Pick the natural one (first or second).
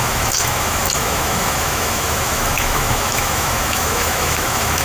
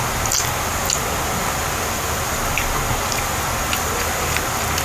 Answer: second